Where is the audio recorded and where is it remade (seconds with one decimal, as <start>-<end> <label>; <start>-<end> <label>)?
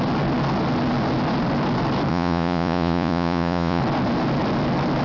0.0-2.1 recorded; 2.1-3.8 remade; 3.8-5.0 recorded